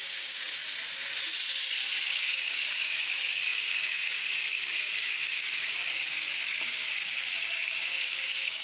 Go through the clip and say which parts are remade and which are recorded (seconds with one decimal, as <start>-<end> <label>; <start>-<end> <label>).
0.0-0.6 remade; 0.6-2.0 recorded; 2.0-8.6 remade